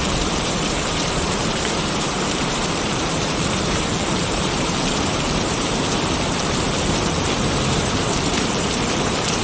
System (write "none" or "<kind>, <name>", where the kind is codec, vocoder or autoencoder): vocoder, BigVGAN v2